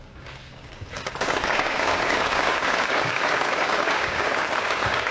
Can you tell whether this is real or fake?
fake